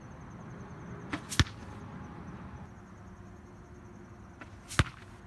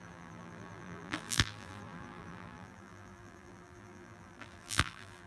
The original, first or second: first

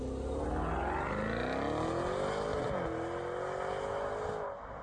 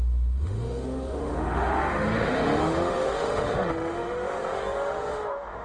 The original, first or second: first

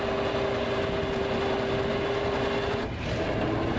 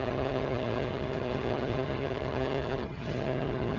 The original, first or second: first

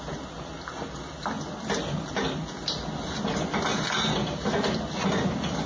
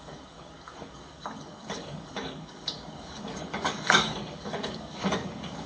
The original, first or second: first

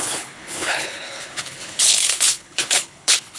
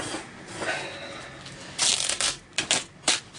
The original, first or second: second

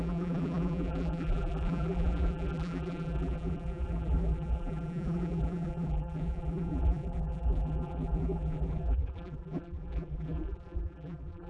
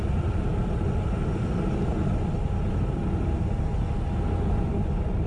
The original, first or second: second